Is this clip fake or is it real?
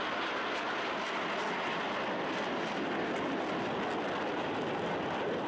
real